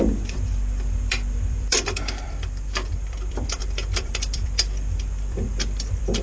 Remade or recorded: remade